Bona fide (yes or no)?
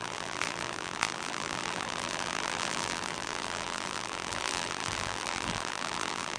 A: no